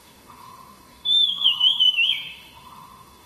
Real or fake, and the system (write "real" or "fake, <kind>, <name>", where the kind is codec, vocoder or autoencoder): fake, autoencoder, DAC-VAE